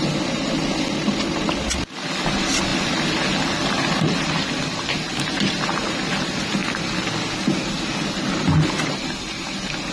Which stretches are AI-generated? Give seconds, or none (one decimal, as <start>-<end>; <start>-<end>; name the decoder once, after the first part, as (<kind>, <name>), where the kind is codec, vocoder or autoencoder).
none